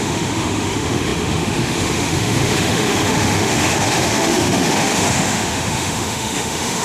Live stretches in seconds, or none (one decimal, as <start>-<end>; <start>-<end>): none